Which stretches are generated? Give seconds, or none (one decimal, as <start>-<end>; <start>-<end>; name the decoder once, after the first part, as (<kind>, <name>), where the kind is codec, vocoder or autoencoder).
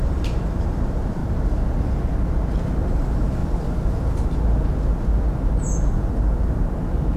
0.0-1.2 (vocoder, BigVGAN v2); 2.9-3.4